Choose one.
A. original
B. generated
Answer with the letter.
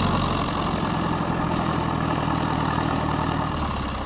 B